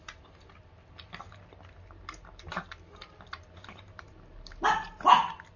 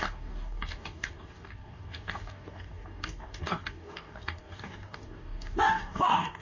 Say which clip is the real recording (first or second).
first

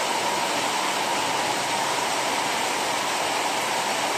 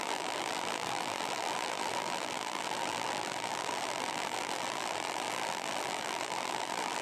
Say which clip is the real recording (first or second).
first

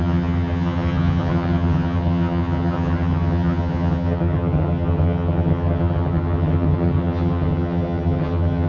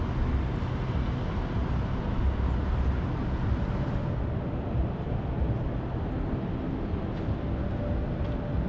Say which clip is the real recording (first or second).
second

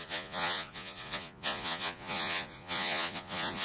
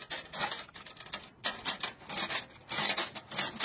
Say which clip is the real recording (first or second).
second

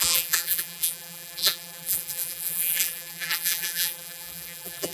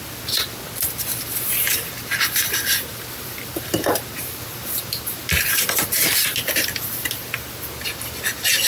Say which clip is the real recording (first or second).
second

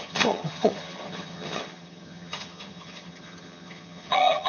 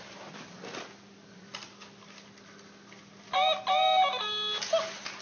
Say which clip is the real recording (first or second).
second